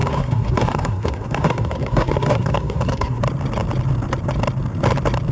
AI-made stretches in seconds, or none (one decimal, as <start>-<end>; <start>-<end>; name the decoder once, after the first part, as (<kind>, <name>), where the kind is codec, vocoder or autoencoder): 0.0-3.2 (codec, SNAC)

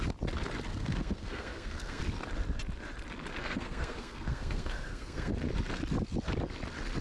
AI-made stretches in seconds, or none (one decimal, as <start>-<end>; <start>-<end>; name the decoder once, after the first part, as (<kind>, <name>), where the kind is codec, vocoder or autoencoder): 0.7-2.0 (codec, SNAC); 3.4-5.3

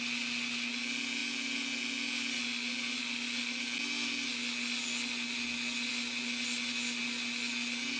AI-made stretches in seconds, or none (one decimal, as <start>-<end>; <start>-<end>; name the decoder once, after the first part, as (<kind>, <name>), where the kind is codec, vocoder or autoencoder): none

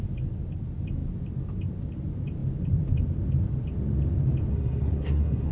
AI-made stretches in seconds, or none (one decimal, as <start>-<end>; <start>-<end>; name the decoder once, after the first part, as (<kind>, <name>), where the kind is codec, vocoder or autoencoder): 4.5-5.5 (codec, SNAC)